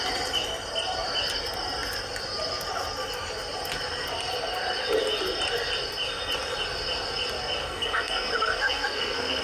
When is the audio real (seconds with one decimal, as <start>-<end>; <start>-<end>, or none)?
0.0-7.6